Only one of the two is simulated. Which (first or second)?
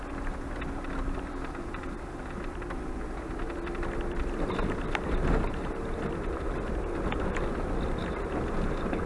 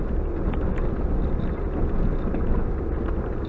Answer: first